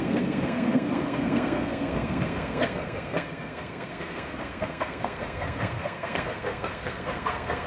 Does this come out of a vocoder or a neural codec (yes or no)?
yes